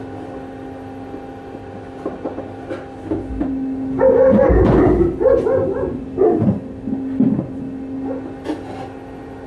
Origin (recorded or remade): recorded